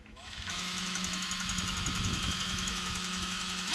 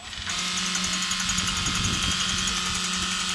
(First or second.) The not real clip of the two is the first